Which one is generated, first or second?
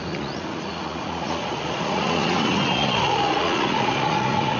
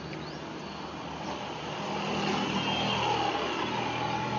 first